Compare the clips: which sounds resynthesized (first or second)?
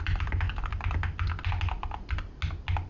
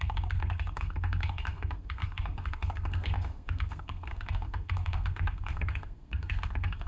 second